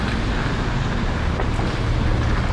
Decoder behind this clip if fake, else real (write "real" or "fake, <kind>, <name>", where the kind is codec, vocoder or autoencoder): real